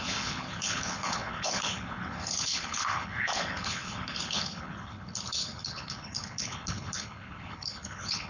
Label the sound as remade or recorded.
remade